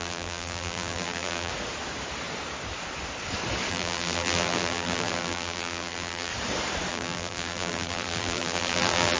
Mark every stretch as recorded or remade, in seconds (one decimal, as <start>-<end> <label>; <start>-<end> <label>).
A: 0.0-1.5 remade; 1.5-3.7 recorded; 3.7-6.3 remade; 6.3-6.9 recorded; 6.9-9.2 remade